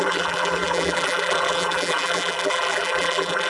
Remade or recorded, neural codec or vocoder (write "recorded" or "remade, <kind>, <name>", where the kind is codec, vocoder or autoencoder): remade, vocoder, BigVGAN v2